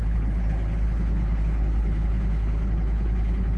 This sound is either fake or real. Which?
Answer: fake